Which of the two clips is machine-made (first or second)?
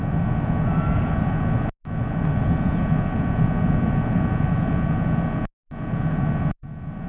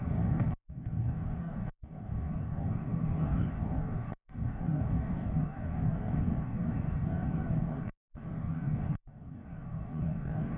second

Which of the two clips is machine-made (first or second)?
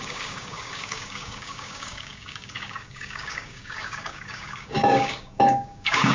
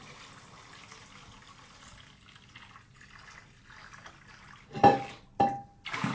first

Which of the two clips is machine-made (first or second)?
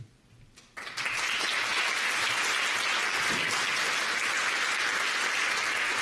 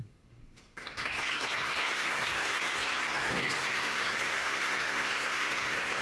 second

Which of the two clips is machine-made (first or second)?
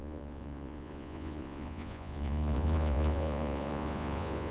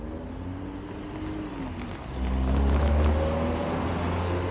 first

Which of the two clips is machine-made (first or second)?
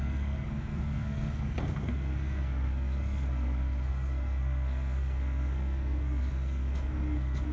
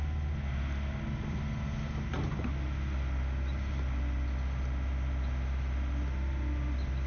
first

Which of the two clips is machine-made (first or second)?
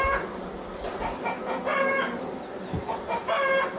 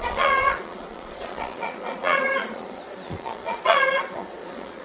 second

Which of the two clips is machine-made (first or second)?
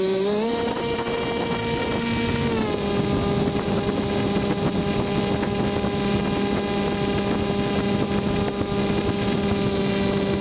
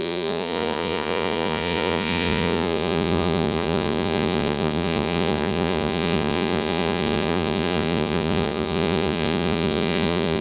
second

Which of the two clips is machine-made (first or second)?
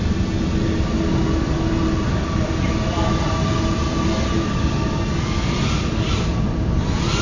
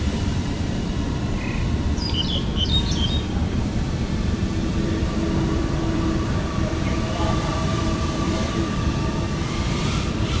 second